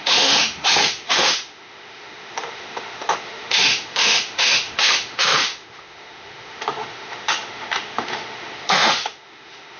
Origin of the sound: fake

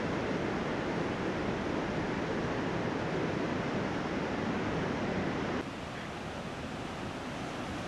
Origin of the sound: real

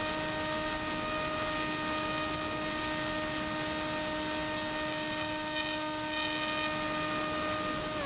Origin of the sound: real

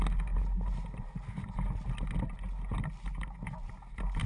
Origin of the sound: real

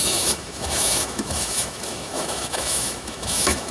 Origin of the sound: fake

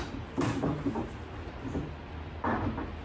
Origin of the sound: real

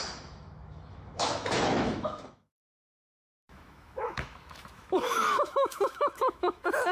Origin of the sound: fake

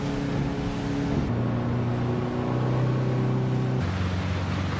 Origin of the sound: real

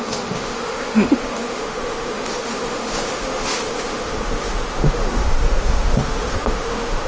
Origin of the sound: fake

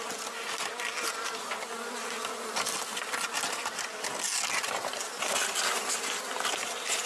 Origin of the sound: real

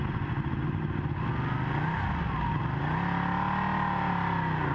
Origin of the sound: real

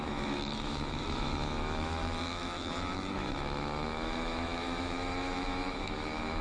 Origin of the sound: fake